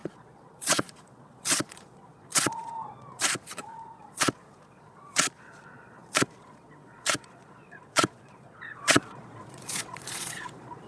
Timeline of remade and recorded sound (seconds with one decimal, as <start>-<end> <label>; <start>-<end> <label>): 0.0-10.9 remade

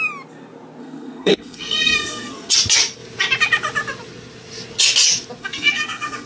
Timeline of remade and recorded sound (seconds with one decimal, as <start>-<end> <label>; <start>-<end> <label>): 0.0-0.8 recorded; 0.8-2.5 remade; 2.5-5.4 recorded; 5.4-6.3 remade

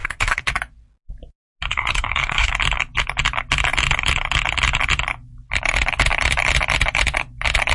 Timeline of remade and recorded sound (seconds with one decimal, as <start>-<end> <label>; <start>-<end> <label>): 0.0-0.5 remade; 0.5-1.7 recorded; 1.7-2.5 remade; 2.5-7.7 recorded